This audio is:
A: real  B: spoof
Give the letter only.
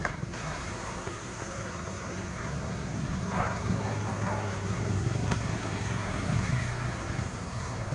B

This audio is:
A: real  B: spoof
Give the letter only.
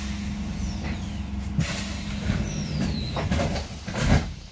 A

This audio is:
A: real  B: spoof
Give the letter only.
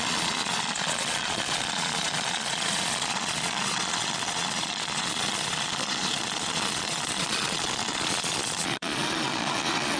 B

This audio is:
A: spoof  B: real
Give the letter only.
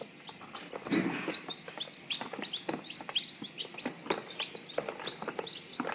B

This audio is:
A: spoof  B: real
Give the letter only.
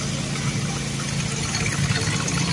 B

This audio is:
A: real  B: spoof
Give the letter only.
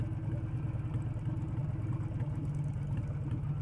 A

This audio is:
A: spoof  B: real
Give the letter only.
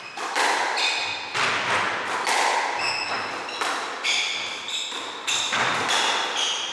B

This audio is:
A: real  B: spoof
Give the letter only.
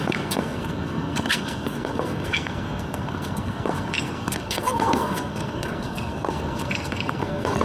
B